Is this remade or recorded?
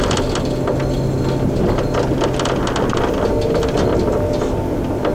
recorded